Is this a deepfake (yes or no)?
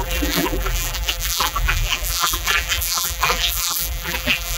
yes